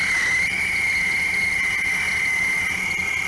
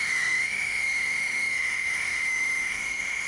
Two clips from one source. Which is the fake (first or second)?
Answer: second